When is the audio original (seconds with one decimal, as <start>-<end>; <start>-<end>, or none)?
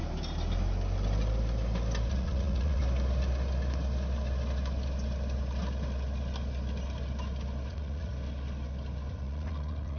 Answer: 0.0-2.1; 2.8-7.7; 8.1-9.1